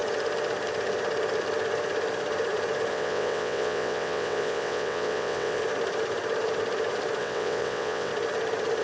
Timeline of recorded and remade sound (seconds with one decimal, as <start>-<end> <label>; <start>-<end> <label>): 0.0-2.9 recorded; 2.9-5.6 remade; 5.6-7.2 recorded; 7.2-8.1 remade; 8.1-8.8 recorded